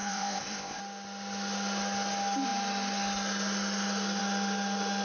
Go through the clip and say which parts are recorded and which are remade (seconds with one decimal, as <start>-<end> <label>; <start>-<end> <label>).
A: 0.0-0.8 remade; 0.8-5.0 recorded